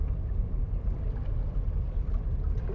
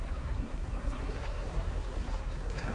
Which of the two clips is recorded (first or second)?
first